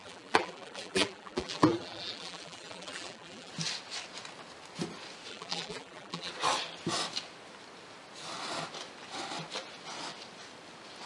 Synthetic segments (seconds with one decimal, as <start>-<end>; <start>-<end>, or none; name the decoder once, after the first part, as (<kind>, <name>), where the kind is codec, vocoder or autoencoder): 0.0-3.5 (vocoder, BigVGAN v2); 5.3-6.3